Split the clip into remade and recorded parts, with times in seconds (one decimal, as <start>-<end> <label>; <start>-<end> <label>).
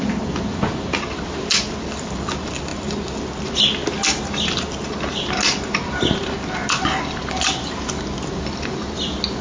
0.0-9.4 recorded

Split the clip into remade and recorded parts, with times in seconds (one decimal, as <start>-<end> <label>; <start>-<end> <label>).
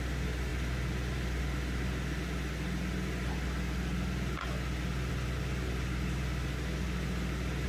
0.0-7.7 recorded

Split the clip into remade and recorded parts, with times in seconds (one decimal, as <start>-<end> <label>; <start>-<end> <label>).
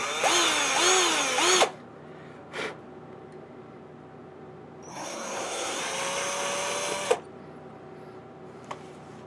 0.0-4.9 recorded; 4.9-5.8 remade; 5.8-9.3 recorded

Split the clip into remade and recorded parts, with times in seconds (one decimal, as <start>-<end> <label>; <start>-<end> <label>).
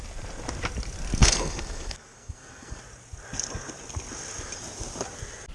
0.0-1.2 recorded; 1.2-2.8 remade; 2.8-5.5 recorded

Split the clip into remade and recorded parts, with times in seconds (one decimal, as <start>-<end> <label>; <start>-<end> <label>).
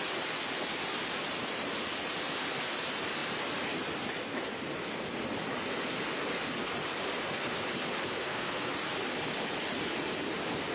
0.0-8.0 recorded; 8.0-8.7 remade; 8.7-10.7 recorded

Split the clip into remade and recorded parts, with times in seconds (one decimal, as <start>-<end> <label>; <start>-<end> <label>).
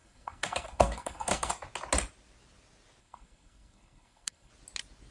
0.0-1.5 remade; 1.5-3.0 recorded; 3.0-4.5 remade; 4.5-5.1 recorded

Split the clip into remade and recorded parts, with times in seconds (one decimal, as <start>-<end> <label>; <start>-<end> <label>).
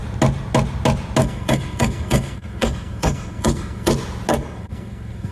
0.0-1.2 recorded; 1.2-3.9 remade; 3.9-4.3 recorded; 4.3-5.3 remade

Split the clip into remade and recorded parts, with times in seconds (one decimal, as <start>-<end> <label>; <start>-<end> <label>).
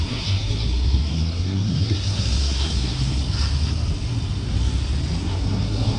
0.0-3.2 remade; 3.2-5.2 recorded; 5.2-6.0 remade